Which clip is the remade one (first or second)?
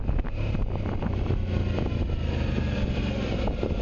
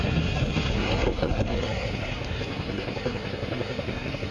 second